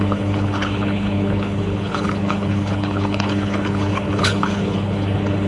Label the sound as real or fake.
fake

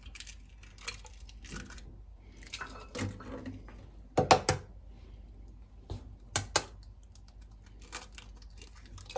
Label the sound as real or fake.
real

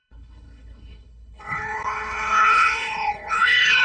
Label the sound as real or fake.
fake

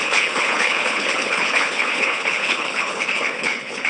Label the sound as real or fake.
fake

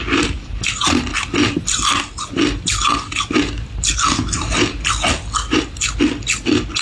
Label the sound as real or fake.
real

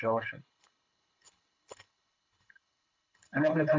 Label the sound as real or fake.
fake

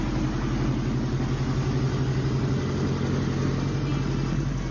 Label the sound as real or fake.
real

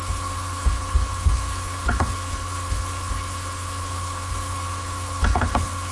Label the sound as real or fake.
fake